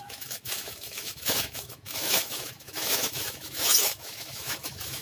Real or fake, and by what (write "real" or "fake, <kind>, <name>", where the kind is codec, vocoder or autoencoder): fake, autoencoder, DAC-VAE